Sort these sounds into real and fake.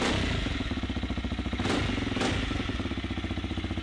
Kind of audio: real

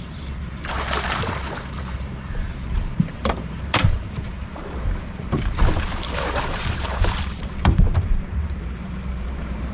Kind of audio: fake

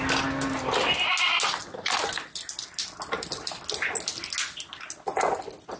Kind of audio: real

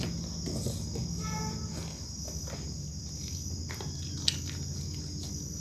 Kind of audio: real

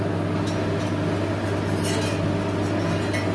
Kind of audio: real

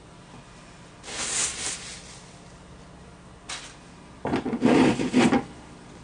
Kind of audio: real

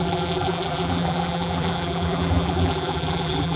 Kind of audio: fake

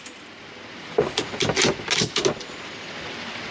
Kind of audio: real